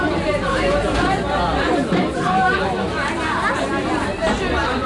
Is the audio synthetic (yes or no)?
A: no